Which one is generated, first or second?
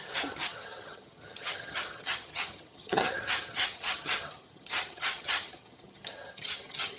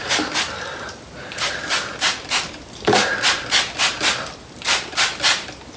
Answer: first